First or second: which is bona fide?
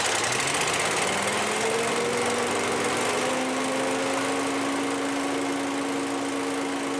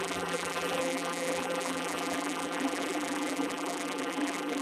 first